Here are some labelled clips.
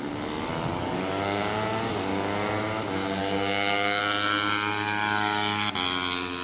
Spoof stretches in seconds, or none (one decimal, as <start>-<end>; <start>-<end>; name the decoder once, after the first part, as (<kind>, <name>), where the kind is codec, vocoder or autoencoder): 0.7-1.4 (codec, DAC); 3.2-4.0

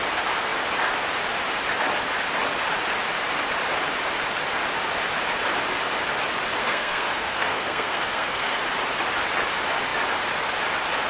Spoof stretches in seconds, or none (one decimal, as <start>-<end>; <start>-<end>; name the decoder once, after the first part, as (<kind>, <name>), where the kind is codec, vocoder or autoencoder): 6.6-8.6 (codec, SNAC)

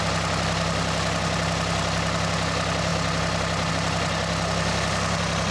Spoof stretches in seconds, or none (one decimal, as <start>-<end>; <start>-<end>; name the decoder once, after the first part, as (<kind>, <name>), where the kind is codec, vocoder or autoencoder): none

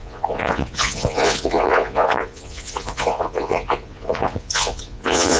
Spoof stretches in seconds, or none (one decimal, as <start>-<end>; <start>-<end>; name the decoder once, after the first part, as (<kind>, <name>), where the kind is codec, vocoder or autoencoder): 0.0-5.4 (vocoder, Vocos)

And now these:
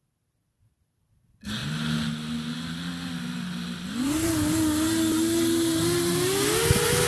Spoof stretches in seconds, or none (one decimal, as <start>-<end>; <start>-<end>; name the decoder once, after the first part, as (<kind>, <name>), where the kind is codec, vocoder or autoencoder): none

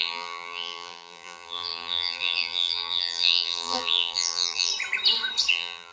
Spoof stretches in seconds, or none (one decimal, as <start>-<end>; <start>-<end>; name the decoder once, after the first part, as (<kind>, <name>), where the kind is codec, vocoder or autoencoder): 0.0-4.7 (vocoder, BigVGAN v2); 5.5-5.9

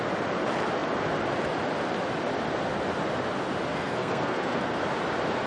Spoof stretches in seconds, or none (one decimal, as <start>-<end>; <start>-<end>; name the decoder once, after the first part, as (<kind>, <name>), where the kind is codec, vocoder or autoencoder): 3.7-4.7 (codec, SNAC)